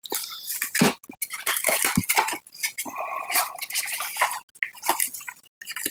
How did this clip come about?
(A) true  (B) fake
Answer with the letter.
A